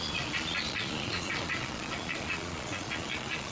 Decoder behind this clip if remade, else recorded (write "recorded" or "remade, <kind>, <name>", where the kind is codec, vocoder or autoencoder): remade, vocoder, Vocos